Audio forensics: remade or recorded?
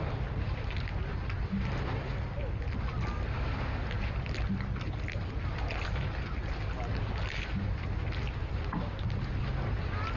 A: recorded